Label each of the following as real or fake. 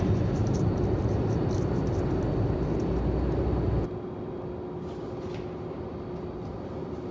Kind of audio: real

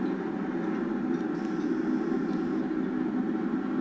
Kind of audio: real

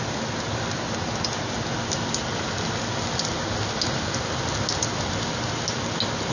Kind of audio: real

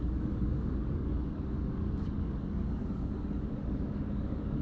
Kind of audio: fake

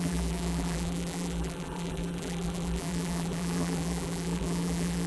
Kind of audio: fake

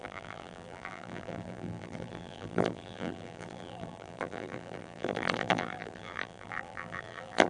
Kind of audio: fake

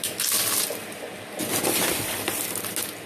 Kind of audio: real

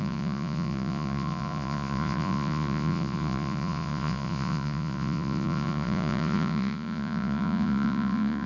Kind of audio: fake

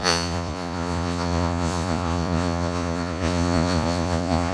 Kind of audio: fake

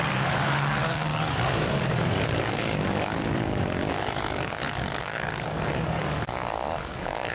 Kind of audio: fake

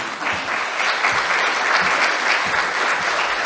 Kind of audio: real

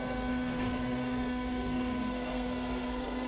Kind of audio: fake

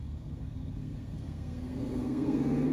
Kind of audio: fake